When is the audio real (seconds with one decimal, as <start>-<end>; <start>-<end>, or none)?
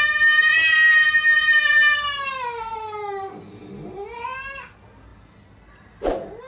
0.0-2.7; 3.4-6.5